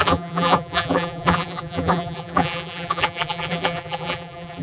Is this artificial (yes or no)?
yes